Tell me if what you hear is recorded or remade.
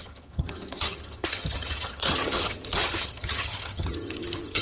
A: remade